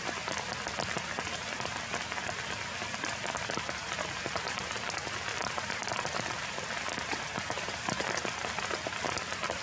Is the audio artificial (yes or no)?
no